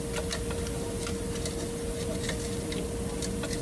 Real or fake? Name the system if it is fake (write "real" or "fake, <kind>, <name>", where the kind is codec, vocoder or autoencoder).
real